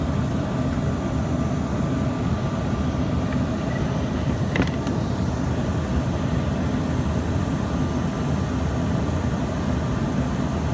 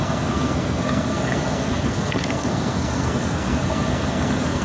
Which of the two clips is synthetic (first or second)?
second